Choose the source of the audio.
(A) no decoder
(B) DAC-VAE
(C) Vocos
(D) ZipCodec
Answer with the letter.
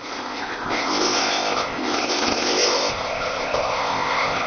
D